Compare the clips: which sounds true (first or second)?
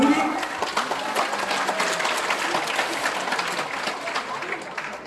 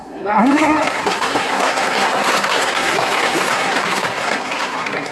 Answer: first